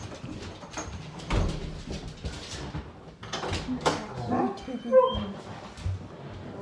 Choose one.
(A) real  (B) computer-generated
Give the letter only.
A